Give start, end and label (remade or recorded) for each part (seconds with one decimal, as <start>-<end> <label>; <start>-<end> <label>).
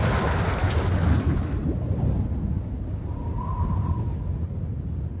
0.0-5.2 recorded